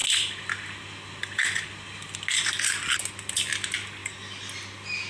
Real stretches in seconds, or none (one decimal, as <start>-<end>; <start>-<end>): 0.0-5.1